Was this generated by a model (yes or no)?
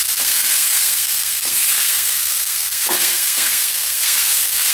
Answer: yes